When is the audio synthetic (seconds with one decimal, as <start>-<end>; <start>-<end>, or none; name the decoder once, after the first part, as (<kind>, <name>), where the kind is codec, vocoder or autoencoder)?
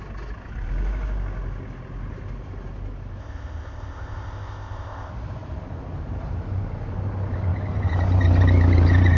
3.2-5.1 (codec, ZipCodec)